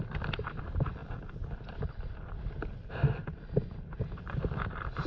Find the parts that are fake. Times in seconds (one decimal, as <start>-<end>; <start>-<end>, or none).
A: none

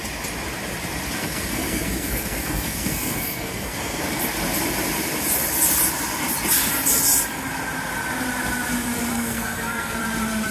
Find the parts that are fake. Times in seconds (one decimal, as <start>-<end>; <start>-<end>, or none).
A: 1.2-4.0; 9.1-10.0

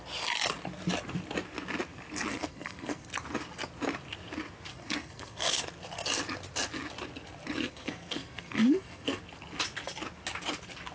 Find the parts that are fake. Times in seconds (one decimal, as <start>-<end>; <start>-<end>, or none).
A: 2.3-3.1; 4.7-5.6; 7.6-9.2

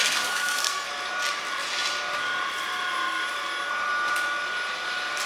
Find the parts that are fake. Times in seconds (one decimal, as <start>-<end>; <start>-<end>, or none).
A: 0.0-0.9

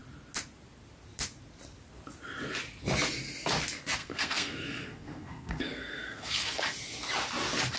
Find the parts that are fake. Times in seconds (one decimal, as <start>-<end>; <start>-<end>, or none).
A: 4.0-6.6

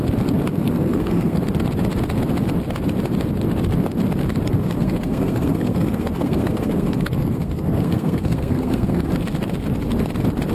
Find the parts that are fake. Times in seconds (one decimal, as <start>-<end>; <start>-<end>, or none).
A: 0.5-1.4; 4.6-9.1

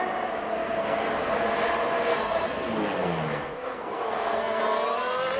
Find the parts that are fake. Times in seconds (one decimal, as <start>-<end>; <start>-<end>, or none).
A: 0.5-1.3; 2.1-4.6

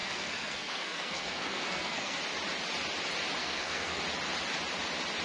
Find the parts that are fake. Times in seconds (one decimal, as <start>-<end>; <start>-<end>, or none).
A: 0.0-2.2; 3.4-4.0